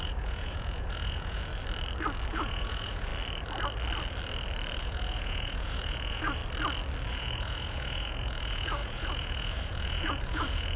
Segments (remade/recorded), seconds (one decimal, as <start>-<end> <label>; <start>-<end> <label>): 0.0-1.5 remade; 1.5-2.3 recorded; 2.3-3.1 remade; 3.1-4.8 recorded; 4.8-6.4 remade; 6.4-7.1 recorded; 7.1-10.8 remade